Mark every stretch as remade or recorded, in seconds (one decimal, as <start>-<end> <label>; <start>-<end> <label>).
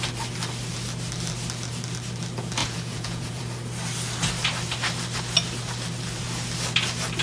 0.0-2.6 recorded; 2.6-3.4 remade; 3.4-7.2 recorded